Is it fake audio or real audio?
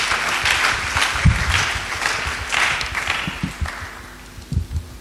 real